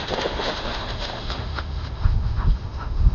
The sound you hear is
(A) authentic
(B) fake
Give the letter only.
B